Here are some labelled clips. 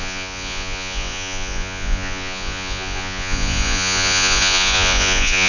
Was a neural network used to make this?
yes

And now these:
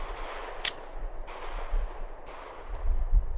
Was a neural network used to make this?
no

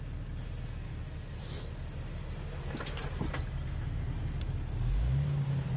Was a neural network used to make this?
no